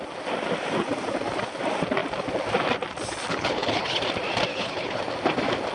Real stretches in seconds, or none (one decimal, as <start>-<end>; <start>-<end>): 0.0-3.3; 4.0-4.5; 5.0-5.7